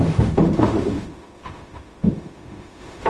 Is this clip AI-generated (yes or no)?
yes